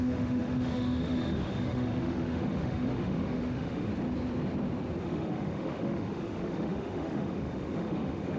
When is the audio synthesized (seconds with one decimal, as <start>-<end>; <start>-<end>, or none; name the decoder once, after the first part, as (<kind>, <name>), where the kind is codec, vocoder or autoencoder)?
0.0-3.9 (autoencoder, DAC-VAE); 5.0-8.4